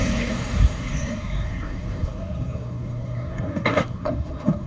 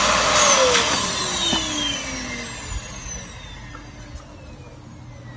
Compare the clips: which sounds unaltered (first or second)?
second